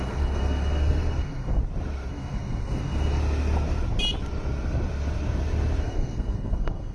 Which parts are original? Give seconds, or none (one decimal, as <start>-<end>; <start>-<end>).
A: 1.6-2.1; 3.2-5.8